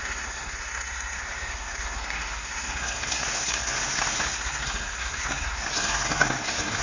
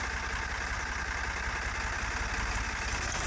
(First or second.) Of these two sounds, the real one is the second